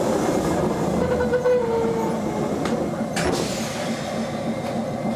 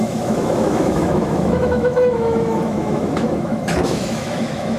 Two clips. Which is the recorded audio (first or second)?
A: first